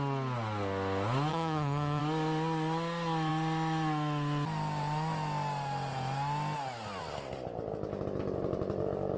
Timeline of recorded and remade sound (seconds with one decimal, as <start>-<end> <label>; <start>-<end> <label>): 0.0-1.3 recorded; 1.3-2.0 remade; 2.0-9.2 recorded